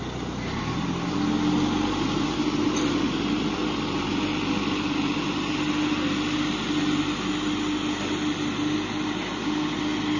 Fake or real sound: real